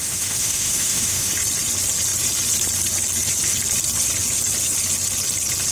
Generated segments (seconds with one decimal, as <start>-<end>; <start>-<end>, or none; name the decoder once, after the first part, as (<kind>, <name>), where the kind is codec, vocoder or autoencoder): 0.0-1.3 (autoencoder, DAC-VAE)